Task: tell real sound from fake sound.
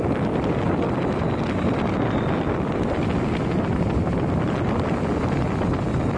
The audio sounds real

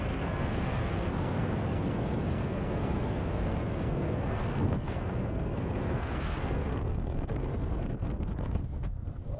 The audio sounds fake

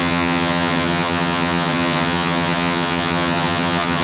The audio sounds fake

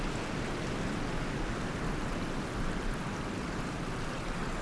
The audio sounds real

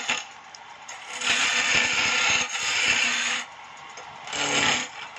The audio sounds real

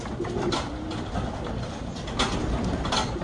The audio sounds real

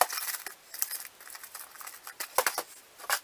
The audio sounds real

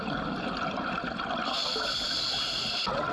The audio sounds real